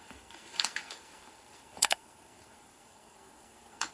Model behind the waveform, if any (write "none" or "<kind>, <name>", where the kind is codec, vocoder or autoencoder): codec, SNAC